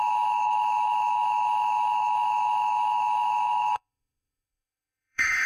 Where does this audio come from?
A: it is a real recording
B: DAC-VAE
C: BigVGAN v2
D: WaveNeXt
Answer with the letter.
B